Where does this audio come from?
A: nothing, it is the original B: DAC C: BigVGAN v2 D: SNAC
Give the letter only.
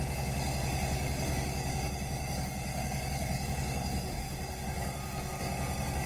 B